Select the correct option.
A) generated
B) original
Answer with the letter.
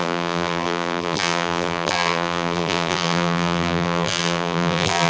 A